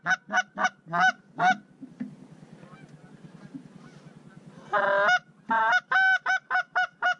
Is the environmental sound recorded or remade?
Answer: recorded